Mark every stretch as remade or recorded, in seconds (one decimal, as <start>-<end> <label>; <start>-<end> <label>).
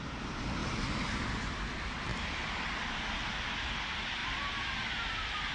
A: 0.0-5.5 recorded